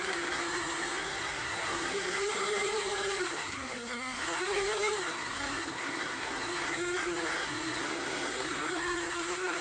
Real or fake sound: fake